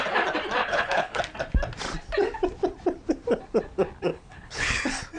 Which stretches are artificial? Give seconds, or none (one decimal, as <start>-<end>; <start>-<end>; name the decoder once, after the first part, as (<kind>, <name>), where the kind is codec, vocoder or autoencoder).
0.6-1.2 (codec, HILCodec); 4.1-4.8